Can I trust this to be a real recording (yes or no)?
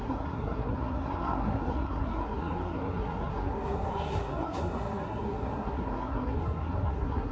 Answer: no